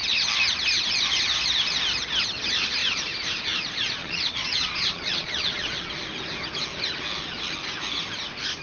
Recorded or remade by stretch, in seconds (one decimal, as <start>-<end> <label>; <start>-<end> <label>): 0.0-4.0 recorded; 4.0-5.9 remade; 5.9-8.6 recorded